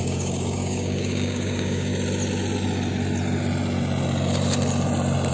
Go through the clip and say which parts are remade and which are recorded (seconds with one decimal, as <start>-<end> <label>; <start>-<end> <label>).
0.0-1.9 remade; 1.9-5.3 recorded

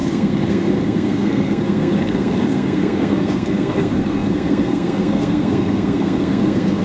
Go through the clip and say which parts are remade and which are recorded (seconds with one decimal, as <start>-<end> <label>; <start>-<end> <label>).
0.0-6.8 remade

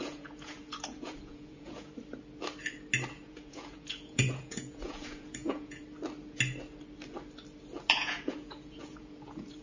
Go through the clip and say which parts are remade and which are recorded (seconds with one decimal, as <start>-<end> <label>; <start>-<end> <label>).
0.0-1.9 remade; 1.9-3.1 recorded; 3.1-5.8 remade; 5.8-7.9 recorded; 7.9-9.6 remade

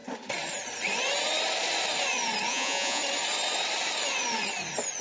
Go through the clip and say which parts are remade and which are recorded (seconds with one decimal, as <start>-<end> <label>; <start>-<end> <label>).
0.0-2.5 recorded; 2.5-3.0 remade; 3.0-5.0 recorded

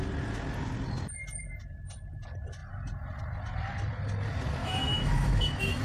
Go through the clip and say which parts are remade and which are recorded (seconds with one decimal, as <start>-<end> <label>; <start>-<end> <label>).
0.0-4.6 recorded; 4.6-5.8 remade

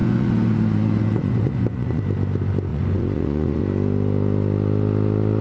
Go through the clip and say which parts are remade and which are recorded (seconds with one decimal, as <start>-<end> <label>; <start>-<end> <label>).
0.0-2.0 remade; 2.0-2.7 recorded; 2.7-3.6 remade; 3.6-5.4 recorded

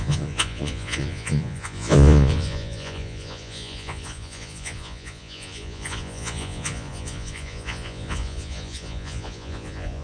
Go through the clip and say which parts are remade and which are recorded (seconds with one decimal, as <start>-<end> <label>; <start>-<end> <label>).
0.0-10.0 remade